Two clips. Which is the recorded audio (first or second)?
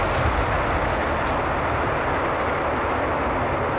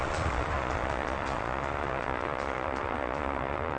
first